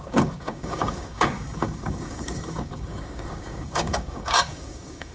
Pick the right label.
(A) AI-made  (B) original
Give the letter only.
A